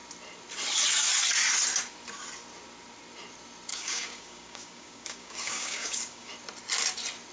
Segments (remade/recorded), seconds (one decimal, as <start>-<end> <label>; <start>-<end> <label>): 0.0-3.7 recorded; 3.7-6.3 remade; 6.3-7.3 recorded